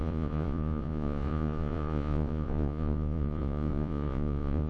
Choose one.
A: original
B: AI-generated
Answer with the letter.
B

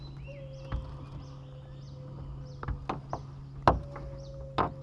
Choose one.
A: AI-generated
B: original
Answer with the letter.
B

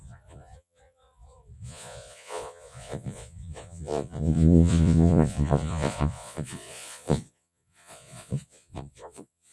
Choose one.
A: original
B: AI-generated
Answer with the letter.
B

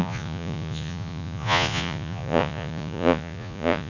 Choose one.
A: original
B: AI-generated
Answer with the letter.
B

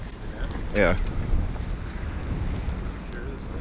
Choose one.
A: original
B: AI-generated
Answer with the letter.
A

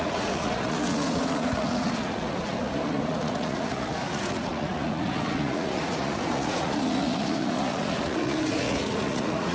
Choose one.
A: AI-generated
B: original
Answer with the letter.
A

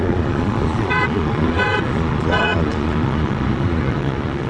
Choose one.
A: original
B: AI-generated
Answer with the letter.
B